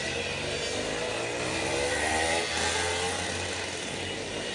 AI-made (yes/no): no